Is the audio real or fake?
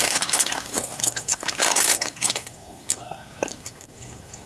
fake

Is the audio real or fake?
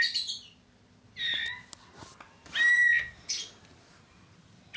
real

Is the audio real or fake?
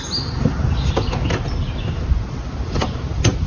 real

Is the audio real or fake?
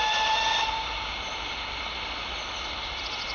real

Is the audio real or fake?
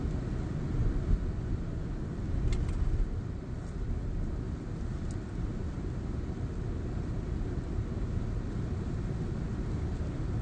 real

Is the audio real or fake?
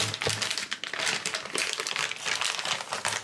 real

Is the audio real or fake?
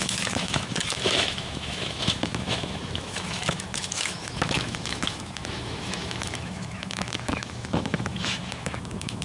fake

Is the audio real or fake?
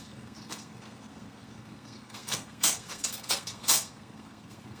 fake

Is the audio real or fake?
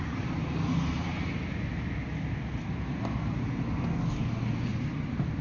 real